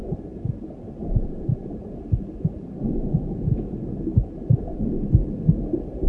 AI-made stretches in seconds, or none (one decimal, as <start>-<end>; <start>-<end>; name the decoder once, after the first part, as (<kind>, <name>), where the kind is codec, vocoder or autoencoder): none